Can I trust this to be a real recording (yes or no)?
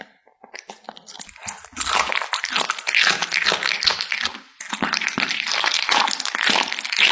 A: yes